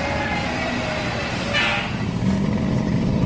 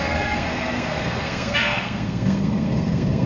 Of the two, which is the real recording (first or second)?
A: first